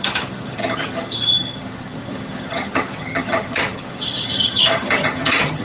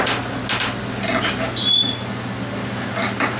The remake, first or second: first